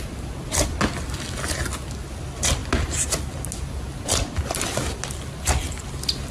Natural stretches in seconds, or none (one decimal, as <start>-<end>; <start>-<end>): 0.0-6.3